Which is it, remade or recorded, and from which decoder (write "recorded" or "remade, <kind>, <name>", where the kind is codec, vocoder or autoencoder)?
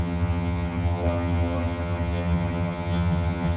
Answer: remade, vocoder, HiFi-GAN